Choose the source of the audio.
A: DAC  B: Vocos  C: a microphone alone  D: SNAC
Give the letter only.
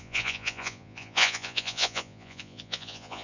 B